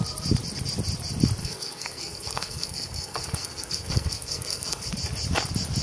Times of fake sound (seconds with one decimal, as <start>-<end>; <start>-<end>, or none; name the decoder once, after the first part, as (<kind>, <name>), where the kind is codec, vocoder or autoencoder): 1.4-4.9 (codec, SNAC)